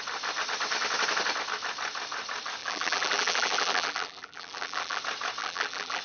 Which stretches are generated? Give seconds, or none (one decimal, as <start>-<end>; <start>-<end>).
2.6-5.0; 5.4-6.0